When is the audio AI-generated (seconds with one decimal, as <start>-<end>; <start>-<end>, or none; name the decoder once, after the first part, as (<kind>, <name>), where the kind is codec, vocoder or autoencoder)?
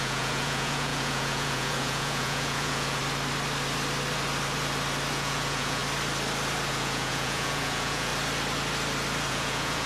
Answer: 0.0-3.0 (vocoder, Vocos); 5.1-5.8; 6.7-8.1; 9.3-9.9